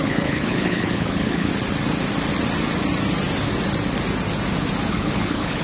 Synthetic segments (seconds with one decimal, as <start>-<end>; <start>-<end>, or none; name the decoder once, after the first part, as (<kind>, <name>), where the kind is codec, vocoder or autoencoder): 0.0-1.5 (codec, HILCodec); 4.9-5.6